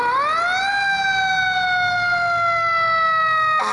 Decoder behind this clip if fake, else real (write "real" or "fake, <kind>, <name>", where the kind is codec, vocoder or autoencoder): real